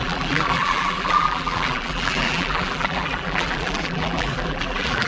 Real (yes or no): no